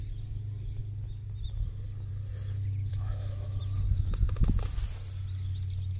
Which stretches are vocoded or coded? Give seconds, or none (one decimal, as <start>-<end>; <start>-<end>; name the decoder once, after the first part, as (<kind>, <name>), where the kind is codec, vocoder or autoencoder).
2.9-3.6 (autoencoder, DAC-VAE)